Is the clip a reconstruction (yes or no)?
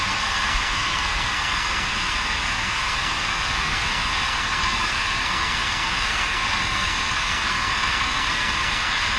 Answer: yes